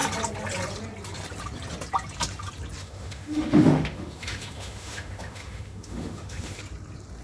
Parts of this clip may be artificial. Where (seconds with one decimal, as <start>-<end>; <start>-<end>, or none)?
2.8-6.6